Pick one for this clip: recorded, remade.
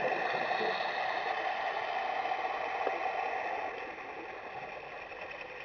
recorded